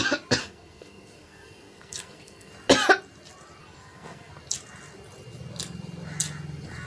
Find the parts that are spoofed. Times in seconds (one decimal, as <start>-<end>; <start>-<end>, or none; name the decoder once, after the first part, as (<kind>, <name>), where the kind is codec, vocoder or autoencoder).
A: 0.4-2.5 (codec, SNAC); 3.6-4.3